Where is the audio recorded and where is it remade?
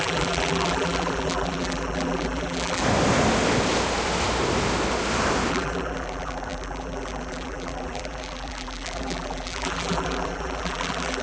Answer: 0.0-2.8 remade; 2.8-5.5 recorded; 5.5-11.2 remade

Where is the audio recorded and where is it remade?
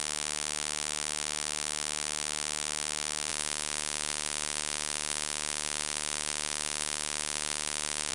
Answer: 0.0-3.3 recorded; 3.3-8.1 remade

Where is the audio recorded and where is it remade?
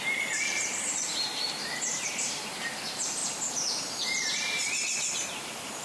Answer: 0.0-3.2 remade; 3.2-3.8 recorded; 3.8-5.8 remade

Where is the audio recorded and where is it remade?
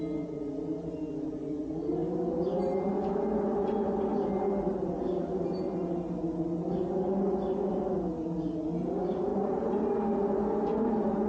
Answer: 0.0-9.3 recorded; 9.3-9.9 remade; 9.9-11.3 recorded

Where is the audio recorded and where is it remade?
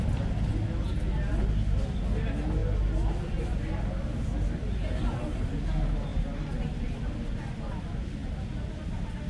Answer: 0.0-9.3 recorded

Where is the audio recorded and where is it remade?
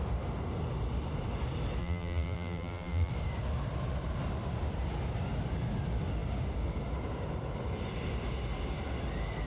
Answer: 0.0-1.8 recorded; 1.8-3.1 remade; 3.1-9.5 recorded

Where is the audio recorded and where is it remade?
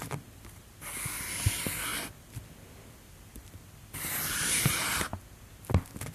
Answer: 0.0-0.7 remade; 0.7-1.9 recorded; 1.9-4.5 remade; 4.5-6.1 recorded